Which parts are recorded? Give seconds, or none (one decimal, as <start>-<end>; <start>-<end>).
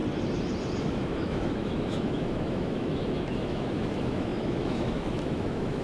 0.0-0.8